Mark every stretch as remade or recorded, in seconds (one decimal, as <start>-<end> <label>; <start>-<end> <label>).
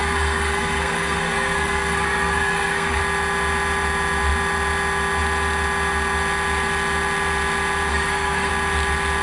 0.0-3.0 remade; 3.0-7.9 recorded; 7.9-8.5 remade; 8.5-9.2 recorded